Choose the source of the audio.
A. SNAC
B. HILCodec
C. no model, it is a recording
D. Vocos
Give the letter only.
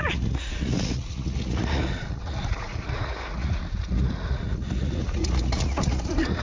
D